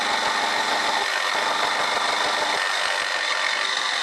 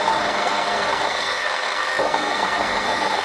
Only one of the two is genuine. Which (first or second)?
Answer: first